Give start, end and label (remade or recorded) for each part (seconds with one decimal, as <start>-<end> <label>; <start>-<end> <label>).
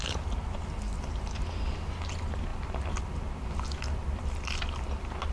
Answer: 0.0-5.3 recorded